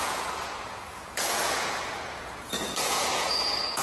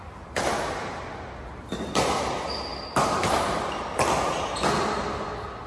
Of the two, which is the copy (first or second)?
first